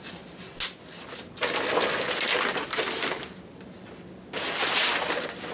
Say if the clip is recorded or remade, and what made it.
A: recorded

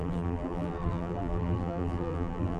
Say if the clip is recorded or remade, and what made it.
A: remade, vocoder, BigVGAN v2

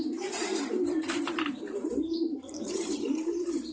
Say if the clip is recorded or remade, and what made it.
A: remade, vocoder, BigVGAN v2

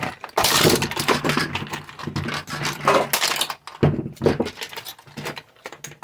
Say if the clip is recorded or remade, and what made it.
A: recorded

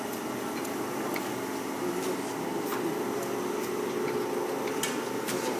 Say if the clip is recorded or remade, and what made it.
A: recorded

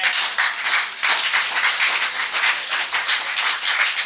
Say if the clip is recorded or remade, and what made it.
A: recorded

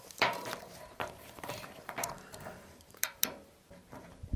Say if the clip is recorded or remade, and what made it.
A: remade, vocoder, BigVGAN v2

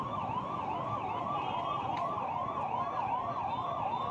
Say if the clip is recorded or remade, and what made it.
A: recorded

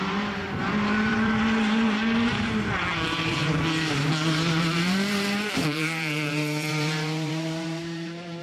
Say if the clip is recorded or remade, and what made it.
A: remade, vocoder, BigVGAN v2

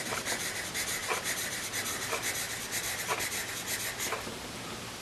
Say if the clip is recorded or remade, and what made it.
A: recorded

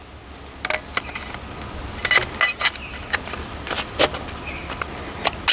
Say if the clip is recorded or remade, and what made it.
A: recorded